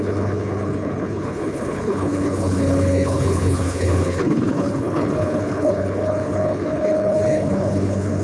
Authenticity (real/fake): fake